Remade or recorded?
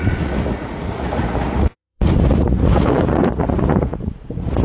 remade